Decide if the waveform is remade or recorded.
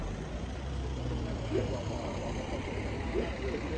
remade